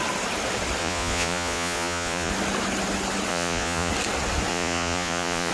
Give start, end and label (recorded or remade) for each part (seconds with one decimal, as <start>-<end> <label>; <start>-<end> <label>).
0.0-0.8 recorded; 0.8-2.3 remade; 2.3-3.3 recorded; 3.3-3.9 remade; 3.9-4.5 recorded; 4.5-5.5 remade